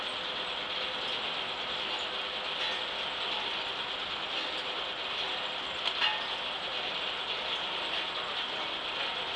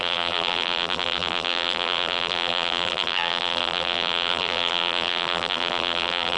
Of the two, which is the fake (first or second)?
second